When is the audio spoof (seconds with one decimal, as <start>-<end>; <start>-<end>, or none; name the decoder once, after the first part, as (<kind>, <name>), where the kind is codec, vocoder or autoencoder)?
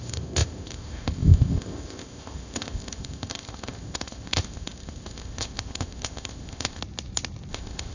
0.0-6.8 (codec, ZipCodec); 7.5-7.9